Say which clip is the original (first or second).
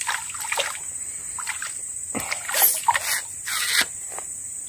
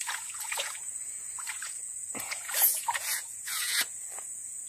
first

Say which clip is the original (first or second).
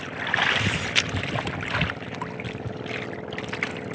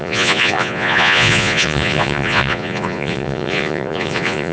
first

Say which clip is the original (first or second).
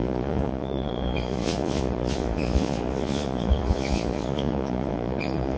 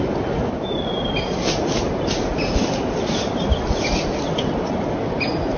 second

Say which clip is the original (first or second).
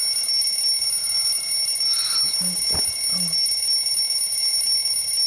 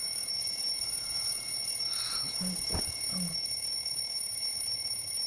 first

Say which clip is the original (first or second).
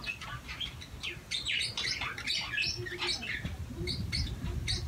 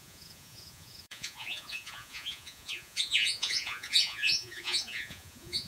first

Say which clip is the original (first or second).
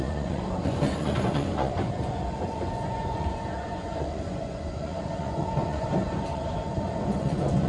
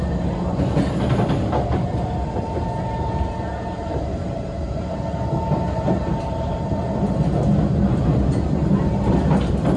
second